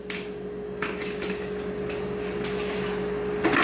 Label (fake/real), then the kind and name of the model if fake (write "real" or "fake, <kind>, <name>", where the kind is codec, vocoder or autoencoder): real